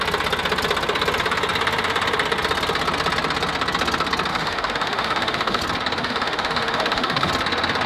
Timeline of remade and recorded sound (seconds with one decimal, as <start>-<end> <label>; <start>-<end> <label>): 0.0-4.3 recorded; 4.3-5.6 remade; 5.6-6.0 recorded; 6.0-7.3 remade; 7.3-7.9 recorded